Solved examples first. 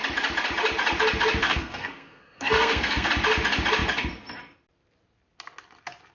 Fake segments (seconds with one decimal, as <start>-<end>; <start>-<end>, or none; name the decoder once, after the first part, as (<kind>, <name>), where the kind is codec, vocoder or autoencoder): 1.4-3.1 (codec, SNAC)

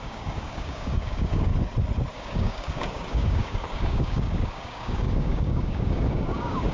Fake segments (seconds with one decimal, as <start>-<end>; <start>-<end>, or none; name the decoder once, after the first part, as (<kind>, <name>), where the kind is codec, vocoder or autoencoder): 0.0-1.5 (codec, DAC); 2.1-6.7

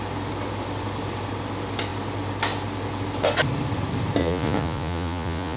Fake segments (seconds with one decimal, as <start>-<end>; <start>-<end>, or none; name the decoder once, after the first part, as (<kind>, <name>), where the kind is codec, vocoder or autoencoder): 4.2-5.6 (vocoder, Vocos)

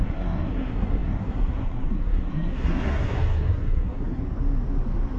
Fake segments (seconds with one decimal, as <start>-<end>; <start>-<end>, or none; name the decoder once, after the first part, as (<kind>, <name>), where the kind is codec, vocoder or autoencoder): 0.0-4.2 (codec, SNAC)

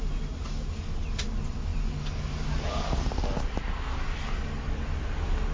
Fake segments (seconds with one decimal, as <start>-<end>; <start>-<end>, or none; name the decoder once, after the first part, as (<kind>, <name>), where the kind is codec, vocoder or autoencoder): none

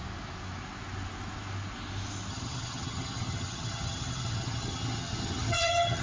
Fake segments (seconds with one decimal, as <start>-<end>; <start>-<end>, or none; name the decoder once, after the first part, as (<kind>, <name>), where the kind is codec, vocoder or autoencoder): 2.3-6.0 (vocoder, HiFi-GAN)